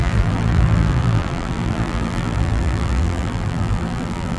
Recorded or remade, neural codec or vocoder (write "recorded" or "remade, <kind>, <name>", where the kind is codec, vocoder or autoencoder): remade, vocoder, BigVGAN v2